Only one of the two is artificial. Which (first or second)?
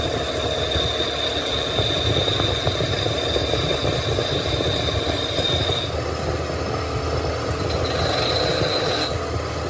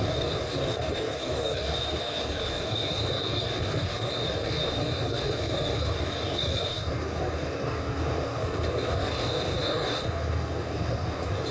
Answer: second